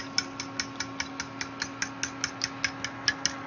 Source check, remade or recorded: recorded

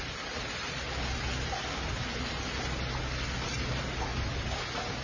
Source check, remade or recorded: recorded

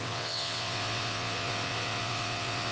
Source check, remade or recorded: remade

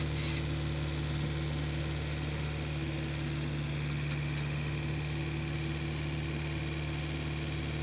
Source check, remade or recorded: recorded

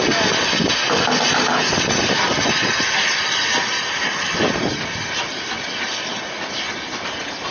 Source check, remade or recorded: recorded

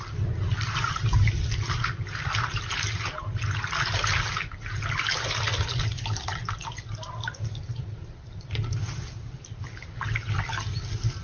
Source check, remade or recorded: recorded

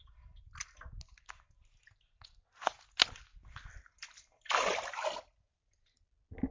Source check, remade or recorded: recorded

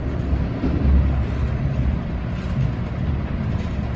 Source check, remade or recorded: recorded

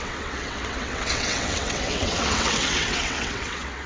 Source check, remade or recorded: remade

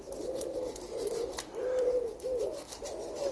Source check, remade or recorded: recorded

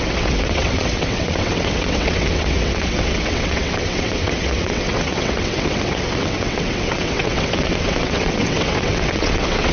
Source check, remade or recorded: remade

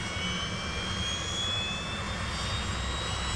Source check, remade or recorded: recorded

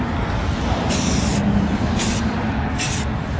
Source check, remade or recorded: recorded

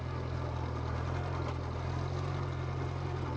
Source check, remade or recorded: recorded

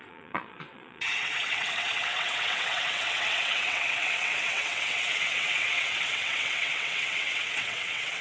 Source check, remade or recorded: remade